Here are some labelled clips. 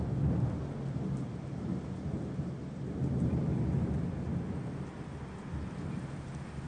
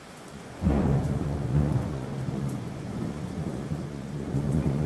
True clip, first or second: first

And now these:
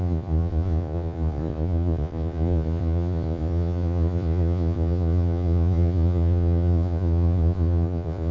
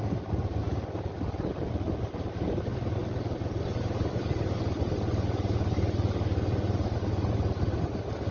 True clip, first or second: second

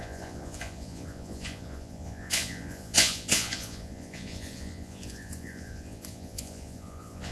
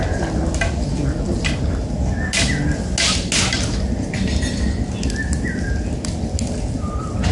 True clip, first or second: second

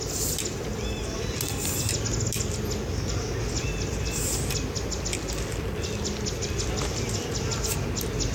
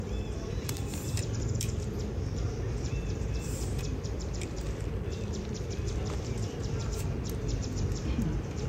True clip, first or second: first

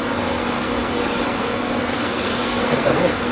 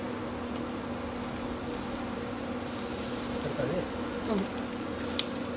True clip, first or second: second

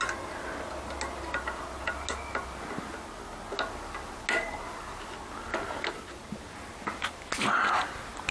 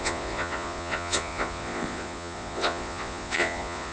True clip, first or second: first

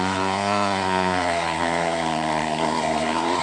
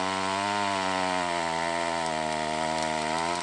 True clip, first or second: second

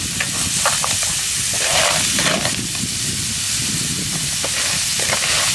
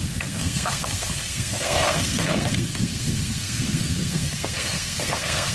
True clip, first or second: first